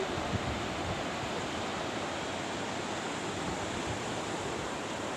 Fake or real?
real